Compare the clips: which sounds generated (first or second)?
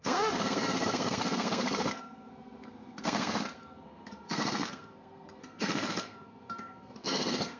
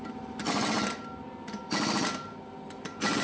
first